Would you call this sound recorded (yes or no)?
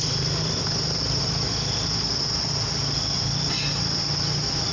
yes